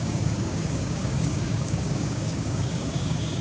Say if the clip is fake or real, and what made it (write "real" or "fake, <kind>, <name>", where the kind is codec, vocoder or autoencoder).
fake, codec, DAC